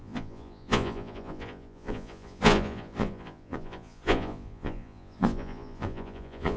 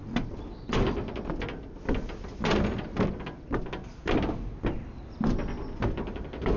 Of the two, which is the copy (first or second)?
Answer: first